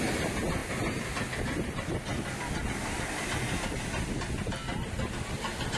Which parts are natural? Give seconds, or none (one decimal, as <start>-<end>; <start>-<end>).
0.0-5.8